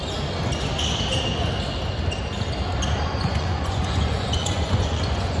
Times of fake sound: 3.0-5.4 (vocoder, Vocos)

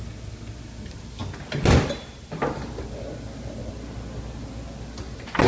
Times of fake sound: none

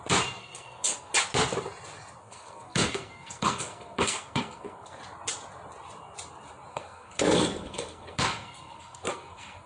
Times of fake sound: 0.4-1.1 (codec, SNAC); 2.2-5.0; 6.7-9.7